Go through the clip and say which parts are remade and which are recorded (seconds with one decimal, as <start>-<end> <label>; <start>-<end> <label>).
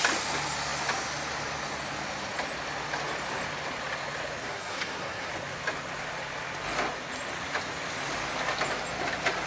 0.0-4.4 recorded; 4.4-5.3 remade; 5.3-9.5 recorded